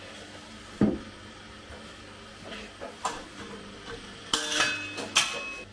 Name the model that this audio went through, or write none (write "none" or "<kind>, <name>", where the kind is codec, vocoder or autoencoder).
none